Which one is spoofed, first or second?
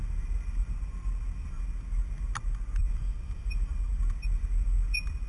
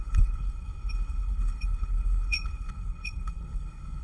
second